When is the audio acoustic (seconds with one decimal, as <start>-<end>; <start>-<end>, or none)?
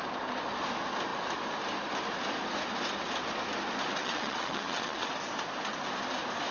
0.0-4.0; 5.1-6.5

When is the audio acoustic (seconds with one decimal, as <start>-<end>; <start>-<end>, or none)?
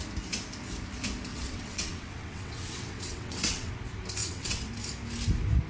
0.0-1.3; 3.7-4.2; 4.7-5.7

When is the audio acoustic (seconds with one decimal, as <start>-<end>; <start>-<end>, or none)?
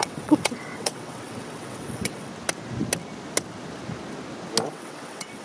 2.3-4.7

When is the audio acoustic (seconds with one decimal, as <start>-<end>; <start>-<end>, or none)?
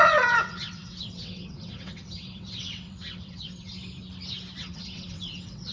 3.8-4.6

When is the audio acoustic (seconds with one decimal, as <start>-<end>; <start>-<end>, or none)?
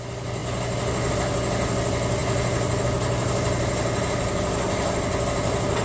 0.0-5.8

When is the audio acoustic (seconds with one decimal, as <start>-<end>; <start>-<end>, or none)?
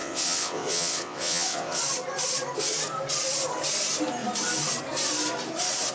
1.8-5.9